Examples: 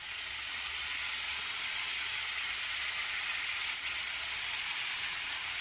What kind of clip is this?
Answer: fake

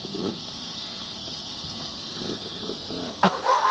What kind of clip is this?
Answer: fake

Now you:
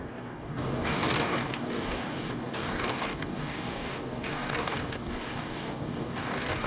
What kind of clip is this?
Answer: fake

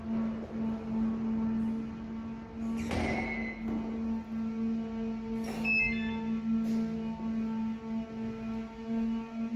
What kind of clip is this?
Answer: real